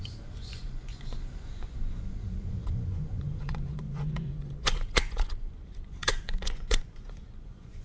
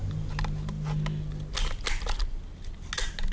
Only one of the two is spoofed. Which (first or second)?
first